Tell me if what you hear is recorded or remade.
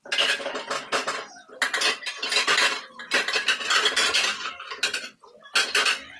recorded